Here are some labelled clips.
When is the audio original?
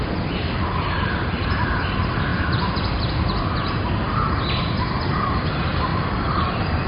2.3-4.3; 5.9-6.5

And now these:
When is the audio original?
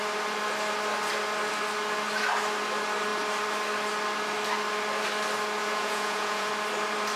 0.0-5.6; 6.5-7.2